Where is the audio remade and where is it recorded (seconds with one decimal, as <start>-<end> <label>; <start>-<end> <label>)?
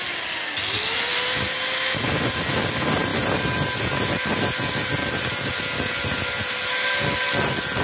0.0-7.8 recorded